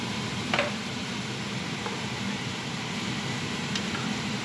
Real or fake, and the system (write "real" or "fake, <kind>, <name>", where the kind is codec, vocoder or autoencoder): fake, vocoder, BigVGAN v2